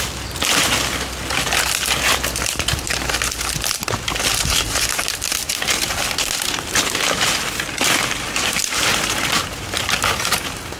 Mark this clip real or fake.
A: real